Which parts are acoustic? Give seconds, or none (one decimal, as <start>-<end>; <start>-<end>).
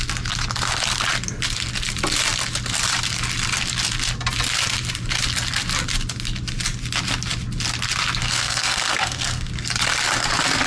0.0-8.2; 9.5-10.7